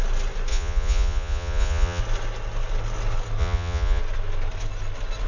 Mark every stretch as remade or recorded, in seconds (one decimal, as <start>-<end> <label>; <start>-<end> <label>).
0.0-0.5 recorded; 0.5-2.0 remade; 2.0-3.4 recorded; 3.4-4.0 remade; 4.0-5.3 recorded